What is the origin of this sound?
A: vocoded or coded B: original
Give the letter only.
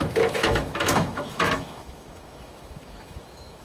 A